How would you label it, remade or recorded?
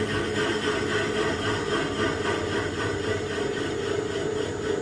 recorded